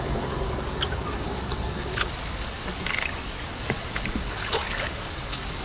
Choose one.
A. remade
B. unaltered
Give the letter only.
A